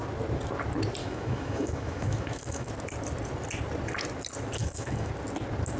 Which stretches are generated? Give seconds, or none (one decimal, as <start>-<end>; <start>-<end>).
1.0-2.7; 4.6-5.1